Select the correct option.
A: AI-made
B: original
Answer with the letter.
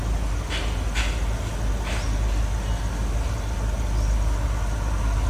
B